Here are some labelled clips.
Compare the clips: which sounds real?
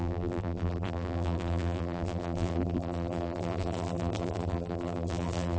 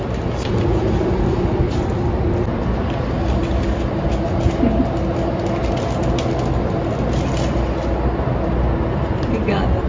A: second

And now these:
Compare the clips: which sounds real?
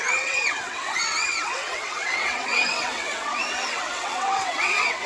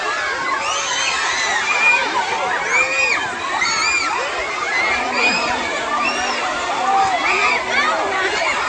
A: second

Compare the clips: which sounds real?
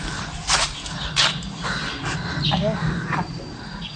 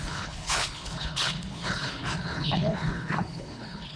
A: first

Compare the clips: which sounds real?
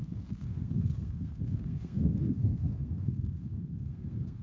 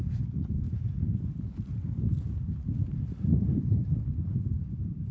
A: second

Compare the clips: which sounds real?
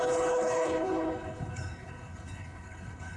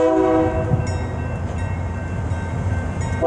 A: second